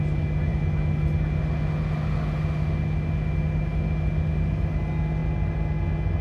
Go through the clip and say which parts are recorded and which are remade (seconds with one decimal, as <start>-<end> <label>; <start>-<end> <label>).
0.0-6.2 recorded